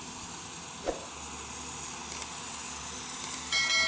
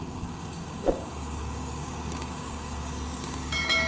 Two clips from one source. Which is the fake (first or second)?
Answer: second